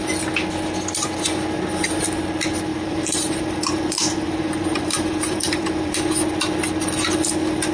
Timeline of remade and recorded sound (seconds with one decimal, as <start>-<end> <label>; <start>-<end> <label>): 0.0-2.7 recorded; 2.7-5.9 remade; 5.9-7.7 recorded